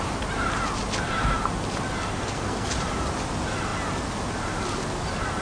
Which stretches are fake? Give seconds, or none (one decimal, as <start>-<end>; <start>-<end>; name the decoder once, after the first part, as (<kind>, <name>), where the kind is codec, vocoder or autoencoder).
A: 2.1-2.7 (codec, SNAC)